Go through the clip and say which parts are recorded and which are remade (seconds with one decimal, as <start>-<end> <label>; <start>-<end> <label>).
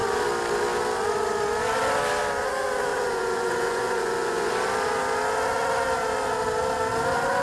0.0-2.9 recorded; 2.9-4.5 remade; 4.5-7.4 recorded